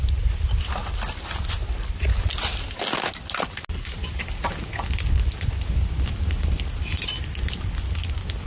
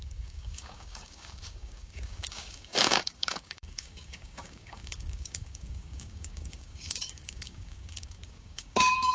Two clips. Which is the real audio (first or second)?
first